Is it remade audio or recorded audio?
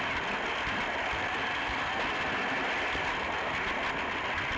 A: recorded